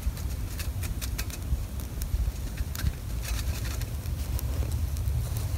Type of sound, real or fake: real